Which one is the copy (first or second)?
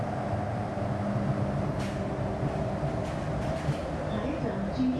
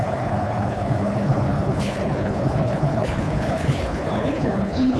second